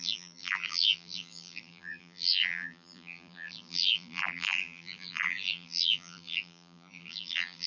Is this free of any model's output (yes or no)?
no